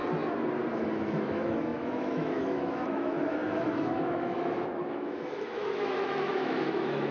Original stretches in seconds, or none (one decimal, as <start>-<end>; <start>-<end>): 0.0-0.8

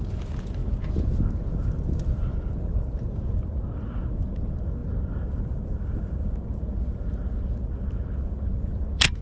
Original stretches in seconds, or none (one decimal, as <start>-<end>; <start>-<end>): 0.0-9.2

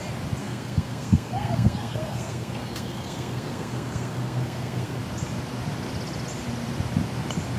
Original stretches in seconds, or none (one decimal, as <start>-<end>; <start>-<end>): 0.0-0.4; 5.0-7.6

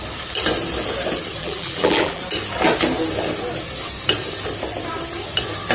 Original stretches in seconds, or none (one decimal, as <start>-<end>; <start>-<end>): 0.0-1.4; 2.2-5.7

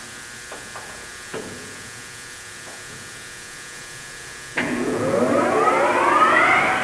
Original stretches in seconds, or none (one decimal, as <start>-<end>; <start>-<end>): 0.0-1.1; 5.2-6.8